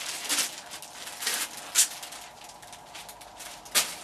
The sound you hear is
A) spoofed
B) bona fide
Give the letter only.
B